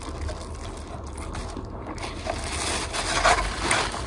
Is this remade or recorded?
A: recorded